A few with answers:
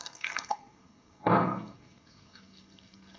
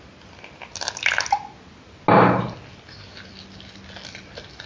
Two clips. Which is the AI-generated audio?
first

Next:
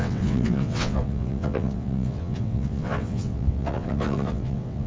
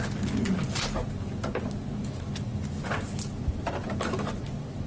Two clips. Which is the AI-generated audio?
first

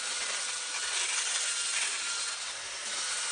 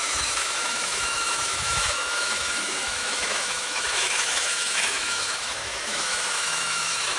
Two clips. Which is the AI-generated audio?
second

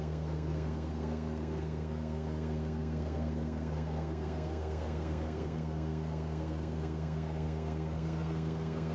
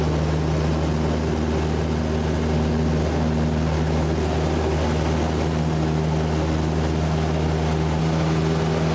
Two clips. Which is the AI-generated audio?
first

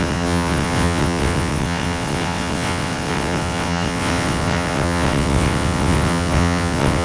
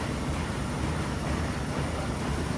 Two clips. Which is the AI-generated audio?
first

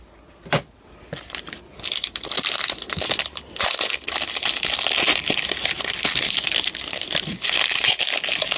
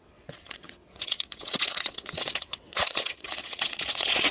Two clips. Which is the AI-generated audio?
second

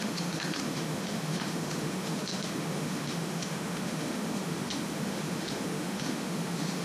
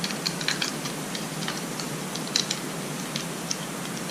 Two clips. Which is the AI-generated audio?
first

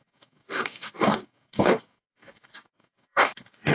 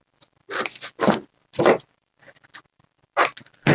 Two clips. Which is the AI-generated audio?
first